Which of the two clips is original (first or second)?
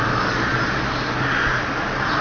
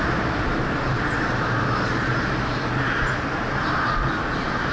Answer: first